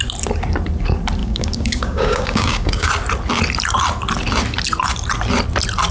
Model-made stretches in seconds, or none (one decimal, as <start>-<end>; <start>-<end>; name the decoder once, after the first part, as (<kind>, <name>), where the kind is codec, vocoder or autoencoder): 1.2-2.9 (codec, DAC)